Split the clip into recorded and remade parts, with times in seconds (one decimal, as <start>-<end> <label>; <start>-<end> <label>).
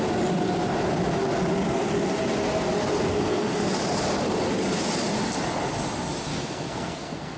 0.0-3.1 recorded; 3.1-3.7 remade; 3.7-6.3 recorded; 6.3-7.4 remade